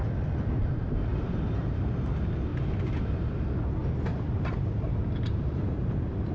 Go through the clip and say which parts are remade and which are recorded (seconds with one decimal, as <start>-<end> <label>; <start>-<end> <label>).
0.0-1.1 recorded; 1.1-1.8 remade; 1.8-2.5 recorded; 2.5-3.6 remade; 3.6-4.1 recorded; 4.1-6.3 remade